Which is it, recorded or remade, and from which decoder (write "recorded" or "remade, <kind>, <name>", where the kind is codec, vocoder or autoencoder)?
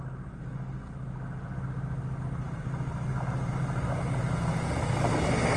recorded